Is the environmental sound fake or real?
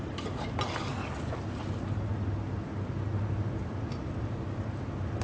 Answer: real